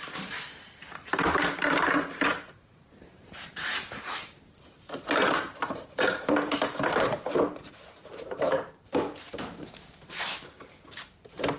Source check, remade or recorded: remade